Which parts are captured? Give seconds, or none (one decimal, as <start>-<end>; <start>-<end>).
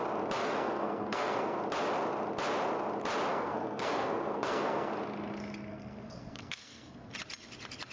0.0-0.4; 1.6-3.3; 4.9-5.7; 7.1-7.9